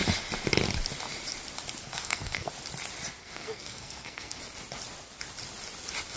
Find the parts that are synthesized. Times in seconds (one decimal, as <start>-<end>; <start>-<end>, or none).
1.8-2.5; 3.2-4.4